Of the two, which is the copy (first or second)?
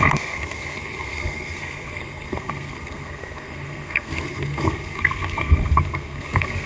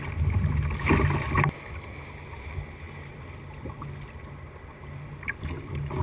first